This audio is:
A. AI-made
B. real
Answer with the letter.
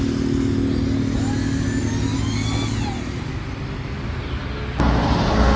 B